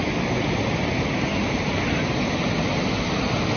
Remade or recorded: recorded